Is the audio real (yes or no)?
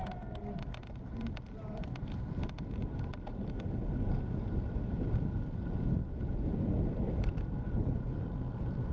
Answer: yes